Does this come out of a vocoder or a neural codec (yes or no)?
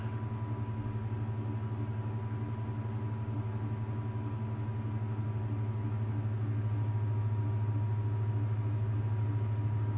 no